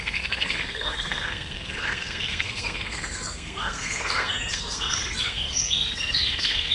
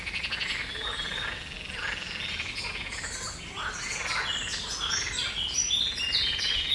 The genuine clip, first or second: second